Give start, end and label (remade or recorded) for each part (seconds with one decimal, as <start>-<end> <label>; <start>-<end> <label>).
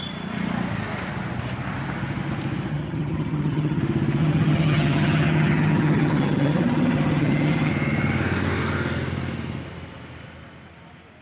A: 0.0-2.7 recorded; 2.7-3.8 remade; 3.8-4.2 recorded; 4.2-7.7 remade; 7.7-11.2 recorded